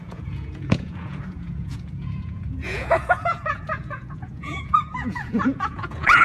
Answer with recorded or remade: remade